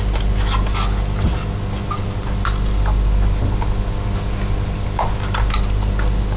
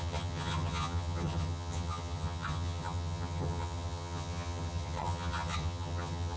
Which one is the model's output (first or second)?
second